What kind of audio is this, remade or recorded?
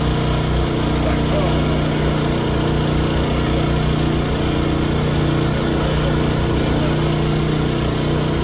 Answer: recorded